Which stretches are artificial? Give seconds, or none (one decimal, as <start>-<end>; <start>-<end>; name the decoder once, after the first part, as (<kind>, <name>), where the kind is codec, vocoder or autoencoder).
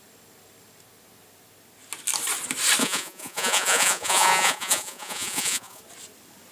2.8-5.8 (vocoder, Vocos)